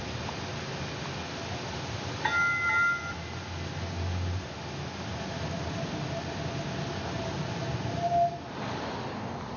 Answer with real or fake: real